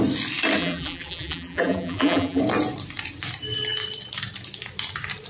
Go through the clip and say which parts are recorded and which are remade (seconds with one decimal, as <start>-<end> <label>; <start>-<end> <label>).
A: 0.0-0.6 recorded; 0.6-2.4 remade; 2.4-5.3 recorded